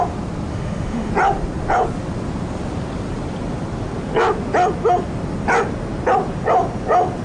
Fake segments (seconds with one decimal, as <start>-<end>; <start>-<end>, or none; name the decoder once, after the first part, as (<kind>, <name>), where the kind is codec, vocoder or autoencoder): 0.5-1.1 (autoencoder, DAC-VAE)